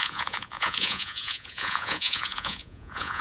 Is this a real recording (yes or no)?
no